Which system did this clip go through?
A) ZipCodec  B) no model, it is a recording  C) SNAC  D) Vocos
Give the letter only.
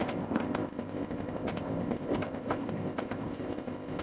A